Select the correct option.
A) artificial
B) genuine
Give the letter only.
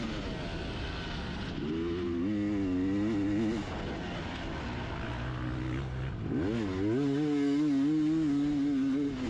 B